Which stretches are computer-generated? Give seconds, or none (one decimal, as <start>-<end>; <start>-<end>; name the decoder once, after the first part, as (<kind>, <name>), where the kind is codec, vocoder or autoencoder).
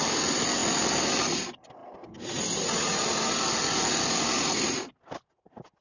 none